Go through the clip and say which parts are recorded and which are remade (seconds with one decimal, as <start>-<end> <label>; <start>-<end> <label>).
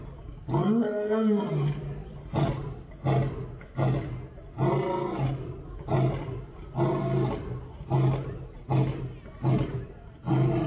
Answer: 0.0-10.7 recorded